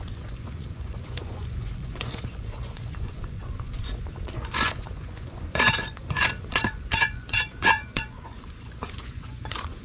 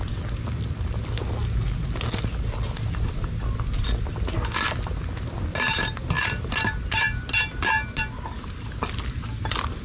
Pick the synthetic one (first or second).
first